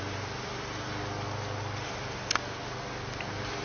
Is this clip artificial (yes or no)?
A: no